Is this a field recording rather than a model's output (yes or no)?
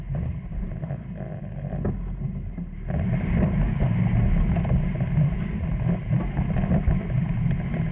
yes